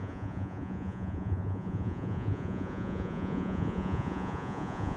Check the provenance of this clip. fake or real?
fake